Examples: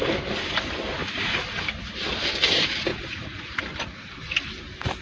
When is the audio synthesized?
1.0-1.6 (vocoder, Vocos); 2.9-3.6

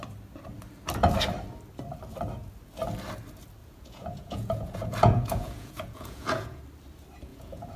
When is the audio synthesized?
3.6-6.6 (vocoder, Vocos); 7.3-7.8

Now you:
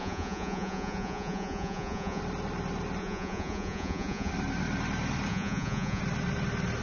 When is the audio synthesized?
0.0-2.2 (vocoder, Vocos); 3.0-4.3; 5.3-6.0

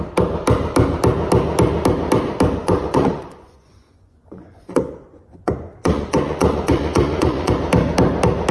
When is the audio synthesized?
2.6-7.5 (vocoder, Vocos)

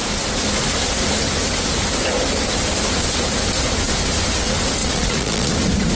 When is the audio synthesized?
4.8-5.5 (vocoder, Vocos)

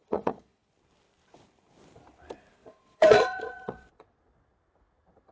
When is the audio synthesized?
0.0-0.7 (vocoder, Vocos); 2.6-4.2

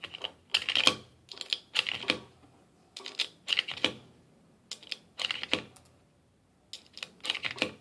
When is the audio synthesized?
none